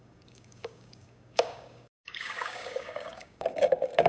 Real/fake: fake